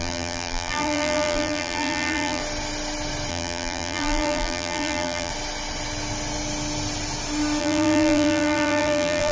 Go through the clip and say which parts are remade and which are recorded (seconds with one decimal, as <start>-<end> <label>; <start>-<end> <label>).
0.0-2.4 remade; 2.4-3.3 recorded; 3.3-5.3 remade; 5.3-7.6 recorded; 7.6-9.3 remade